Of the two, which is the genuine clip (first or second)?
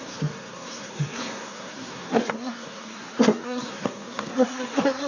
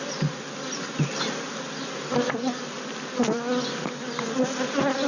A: second